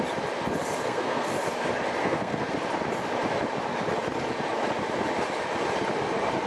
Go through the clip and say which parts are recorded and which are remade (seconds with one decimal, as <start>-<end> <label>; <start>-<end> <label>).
0.0-0.8 recorded; 0.8-1.3 remade; 1.3-2.0 recorded; 2.0-2.5 remade; 2.5-6.5 recorded